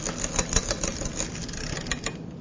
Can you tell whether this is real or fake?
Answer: real